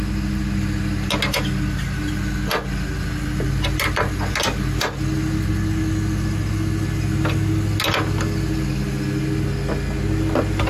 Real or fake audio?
real